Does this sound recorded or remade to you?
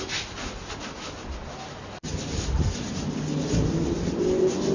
recorded